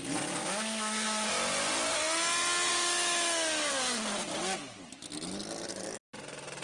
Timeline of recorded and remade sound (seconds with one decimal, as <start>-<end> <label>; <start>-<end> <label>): 0.0-0.4 recorded; 0.4-1.3 remade; 1.3-2.7 recorded; 2.7-3.7 remade; 3.7-6.6 recorded

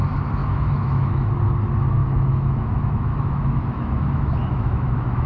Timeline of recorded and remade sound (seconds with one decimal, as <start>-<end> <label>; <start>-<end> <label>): 0.0-0.4 recorded; 0.4-1.3 remade; 1.3-2.0 recorded; 2.0-5.3 remade

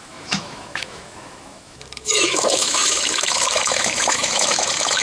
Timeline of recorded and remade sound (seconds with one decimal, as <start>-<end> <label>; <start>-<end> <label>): 0.0-5.0 remade

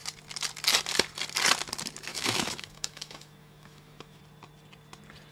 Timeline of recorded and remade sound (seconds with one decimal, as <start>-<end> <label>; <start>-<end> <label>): 0.0-2.1 recorded; 2.1-4.2 remade; 4.2-5.3 recorded

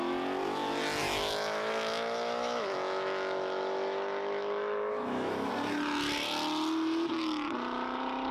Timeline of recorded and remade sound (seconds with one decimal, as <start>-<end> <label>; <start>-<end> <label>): 0.0-1.0 recorded; 1.0-5.5 remade; 5.5-8.3 recorded